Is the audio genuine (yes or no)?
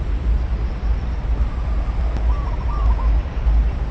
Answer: yes